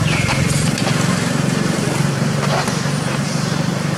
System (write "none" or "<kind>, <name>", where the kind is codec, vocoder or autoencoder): vocoder, BigVGAN v2